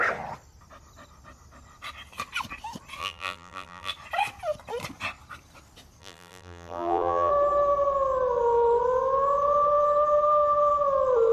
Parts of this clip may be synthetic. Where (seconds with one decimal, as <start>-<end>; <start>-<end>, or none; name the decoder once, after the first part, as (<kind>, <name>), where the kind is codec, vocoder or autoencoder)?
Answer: 3.0-3.9 (vocoder, BigVGAN v2); 6.0-7.3